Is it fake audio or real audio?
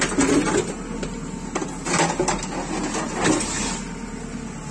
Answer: real